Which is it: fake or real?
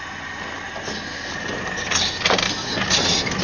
real